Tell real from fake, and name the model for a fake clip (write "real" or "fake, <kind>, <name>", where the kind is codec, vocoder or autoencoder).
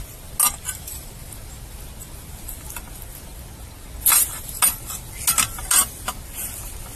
real